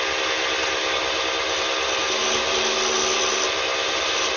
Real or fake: real